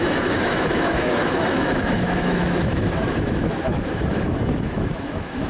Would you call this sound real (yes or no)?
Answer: no